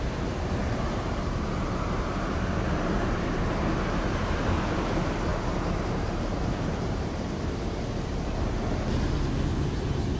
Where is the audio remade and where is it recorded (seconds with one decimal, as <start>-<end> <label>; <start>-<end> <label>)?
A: 0.0-3.4 remade; 3.4-4.1 recorded; 4.1-5.3 remade; 5.3-10.2 recorded